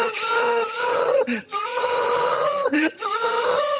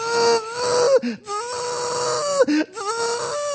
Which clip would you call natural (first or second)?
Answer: second